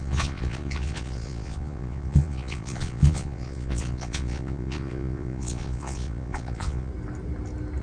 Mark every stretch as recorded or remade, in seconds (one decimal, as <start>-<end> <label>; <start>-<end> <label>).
0.0-6.9 remade; 6.9-7.8 recorded